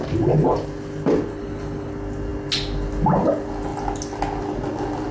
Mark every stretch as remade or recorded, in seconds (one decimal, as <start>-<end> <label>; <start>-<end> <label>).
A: 0.0-1.3 recorded; 1.3-1.9 remade; 1.9-5.1 recorded